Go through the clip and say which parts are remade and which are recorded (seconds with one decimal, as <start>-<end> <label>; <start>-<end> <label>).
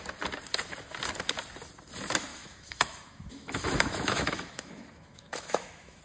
0.0-2.3 recorded; 2.3-6.0 remade